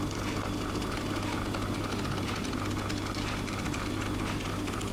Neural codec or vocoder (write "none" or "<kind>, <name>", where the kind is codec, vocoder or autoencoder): none